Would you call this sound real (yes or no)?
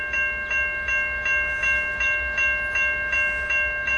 yes